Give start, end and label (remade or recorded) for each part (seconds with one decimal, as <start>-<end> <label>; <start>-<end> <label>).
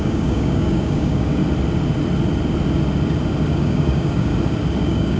0.0-1.4 remade; 1.4-3.5 recorded; 3.5-4.3 remade; 4.3-4.8 recorded; 4.8-5.2 remade